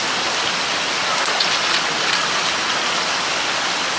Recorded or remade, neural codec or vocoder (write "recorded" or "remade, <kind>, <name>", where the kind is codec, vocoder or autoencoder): recorded